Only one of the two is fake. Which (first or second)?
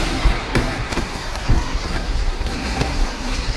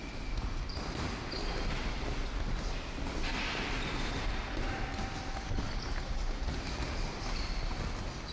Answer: first